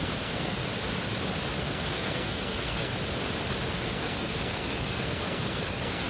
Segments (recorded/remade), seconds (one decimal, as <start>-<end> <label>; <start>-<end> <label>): 0.0-0.6 remade; 0.6-1.6 recorded; 1.6-2.9 remade; 2.9-3.7 recorded; 3.7-6.1 remade